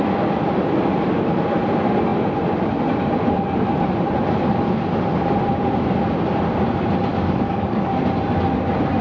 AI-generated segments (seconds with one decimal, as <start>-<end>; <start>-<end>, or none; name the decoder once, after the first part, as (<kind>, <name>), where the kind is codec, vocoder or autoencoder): 7.1-8.0 (codec, DAC)